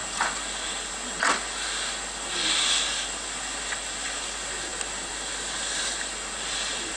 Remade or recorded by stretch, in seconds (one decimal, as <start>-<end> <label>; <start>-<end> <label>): 0.0-7.0 recorded